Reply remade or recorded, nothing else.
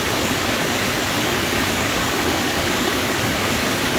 remade